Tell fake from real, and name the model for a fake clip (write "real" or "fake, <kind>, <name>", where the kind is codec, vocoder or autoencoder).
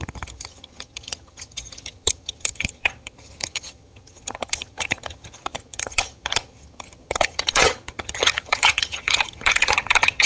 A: fake, vocoder, HiFi-GAN